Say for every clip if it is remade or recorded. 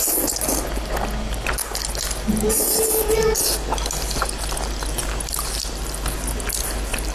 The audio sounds recorded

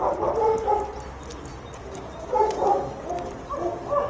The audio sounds recorded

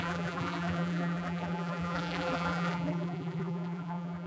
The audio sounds remade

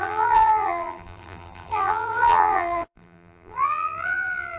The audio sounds remade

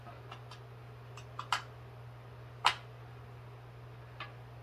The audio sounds recorded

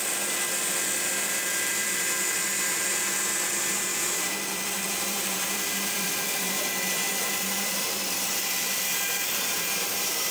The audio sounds remade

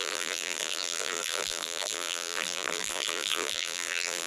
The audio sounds remade